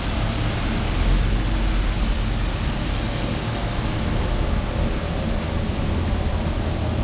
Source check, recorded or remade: recorded